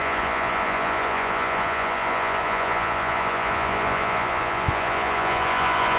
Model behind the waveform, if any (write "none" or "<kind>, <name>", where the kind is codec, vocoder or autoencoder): vocoder, Vocos